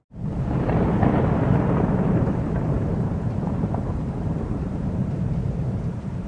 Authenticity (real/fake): fake